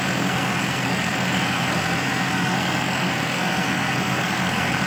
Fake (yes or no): yes